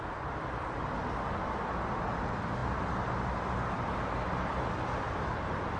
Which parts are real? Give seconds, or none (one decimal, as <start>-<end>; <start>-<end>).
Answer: 0.0-5.8